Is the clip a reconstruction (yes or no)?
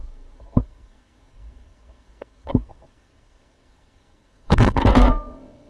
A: yes